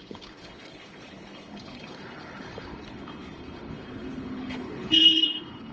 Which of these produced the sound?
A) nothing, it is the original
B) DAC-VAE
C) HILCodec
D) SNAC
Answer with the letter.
C